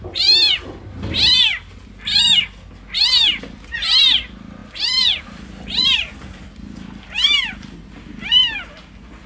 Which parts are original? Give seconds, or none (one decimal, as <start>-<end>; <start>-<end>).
0.0-9.3